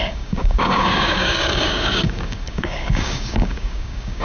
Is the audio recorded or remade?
remade